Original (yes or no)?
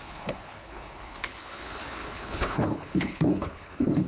no